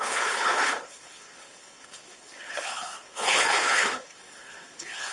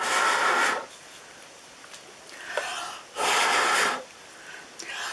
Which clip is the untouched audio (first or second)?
second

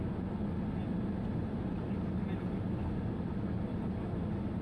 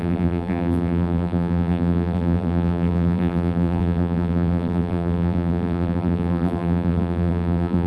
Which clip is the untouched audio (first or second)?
first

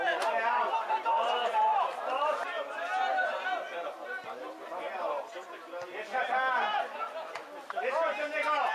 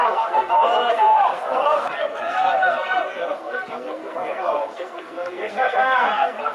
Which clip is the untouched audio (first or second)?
first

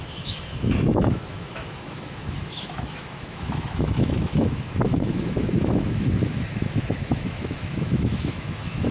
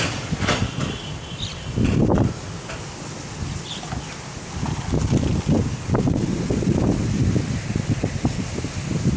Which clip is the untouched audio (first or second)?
second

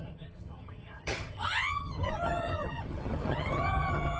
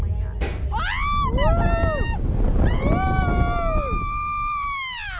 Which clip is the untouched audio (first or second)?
second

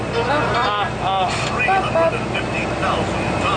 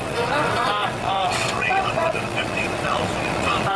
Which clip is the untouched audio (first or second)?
first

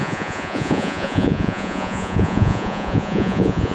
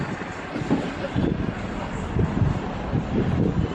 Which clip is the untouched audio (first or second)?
second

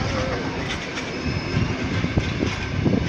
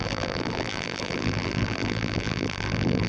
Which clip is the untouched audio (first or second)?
first